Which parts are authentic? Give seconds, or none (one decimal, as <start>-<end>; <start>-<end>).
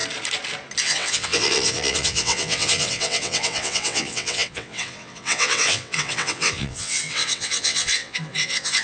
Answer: 0.0-0.8